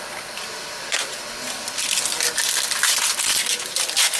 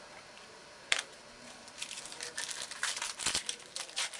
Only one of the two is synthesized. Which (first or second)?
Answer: second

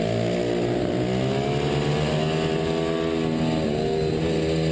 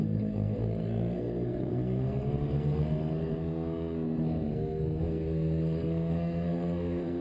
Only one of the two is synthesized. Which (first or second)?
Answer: second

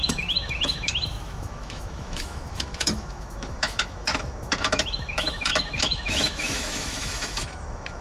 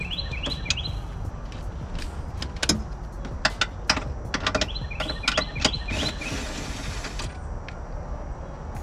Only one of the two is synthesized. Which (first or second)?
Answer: first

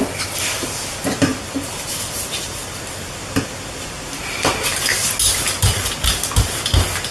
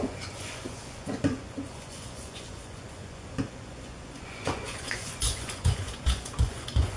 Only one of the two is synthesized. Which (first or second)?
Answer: second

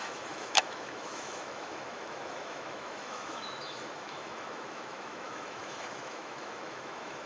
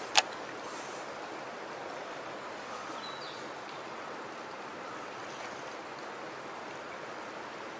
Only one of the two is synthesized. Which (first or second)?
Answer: first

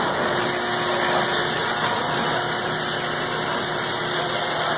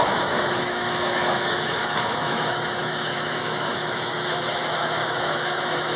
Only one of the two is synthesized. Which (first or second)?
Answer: second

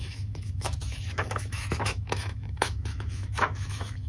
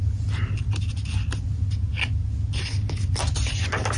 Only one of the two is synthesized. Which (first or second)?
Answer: first